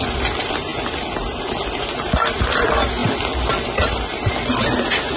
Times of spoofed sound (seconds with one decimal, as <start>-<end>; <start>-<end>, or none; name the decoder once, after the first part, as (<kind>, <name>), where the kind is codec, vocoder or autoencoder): 3.0-3.5 (vocoder, BigVGAN v2)